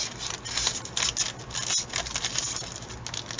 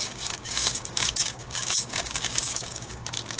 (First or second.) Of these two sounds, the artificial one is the second